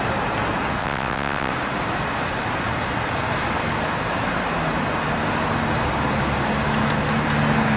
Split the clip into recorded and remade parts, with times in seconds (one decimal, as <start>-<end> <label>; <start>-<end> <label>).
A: 0.0-0.8 recorded; 0.8-1.5 remade; 1.5-7.8 recorded